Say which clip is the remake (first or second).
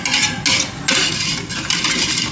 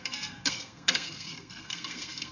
second